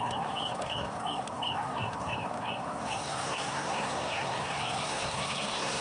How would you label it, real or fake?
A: fake